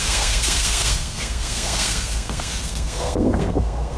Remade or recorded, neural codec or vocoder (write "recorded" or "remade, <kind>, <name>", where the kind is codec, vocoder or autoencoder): remade, codec, SNAC